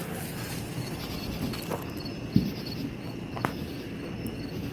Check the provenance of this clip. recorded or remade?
recorded